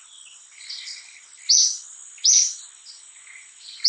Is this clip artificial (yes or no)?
no